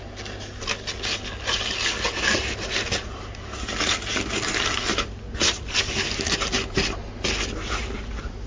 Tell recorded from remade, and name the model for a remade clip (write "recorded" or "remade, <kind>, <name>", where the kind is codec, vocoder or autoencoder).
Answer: recorded